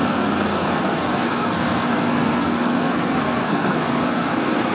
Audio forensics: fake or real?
fake